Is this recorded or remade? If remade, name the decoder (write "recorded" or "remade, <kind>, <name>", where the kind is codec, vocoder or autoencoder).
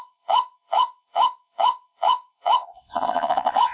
remade, vocoder, WaveNeXt